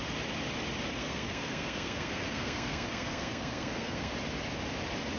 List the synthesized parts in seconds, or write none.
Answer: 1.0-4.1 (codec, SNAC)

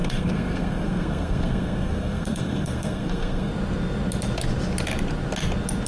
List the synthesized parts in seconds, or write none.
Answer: 0.0-3.5 (codec, SNAC)

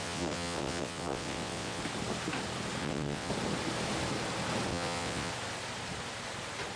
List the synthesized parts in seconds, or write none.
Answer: 0.0-1.8 (vocoder, WaveNeXt); 2.8-3.3; 4.7-5.3

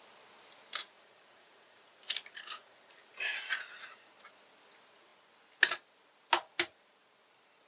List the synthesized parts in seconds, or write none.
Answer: 0.8-4.1 (vocoder, Vocos)

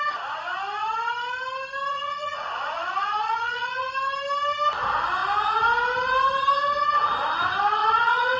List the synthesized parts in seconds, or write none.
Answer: 1.9-3.9 (vocoder, Vocos); 7.8-8.4

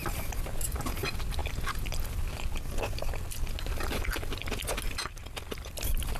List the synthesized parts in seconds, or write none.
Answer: none

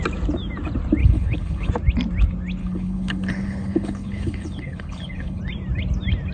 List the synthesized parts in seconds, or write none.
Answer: 1.0-1.7 (codec, HILCodec); 2.6-5.4

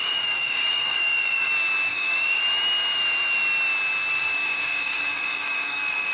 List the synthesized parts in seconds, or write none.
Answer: 0.0-1.5 (codec, DAC); 1.9-2.4; 4.1-6.1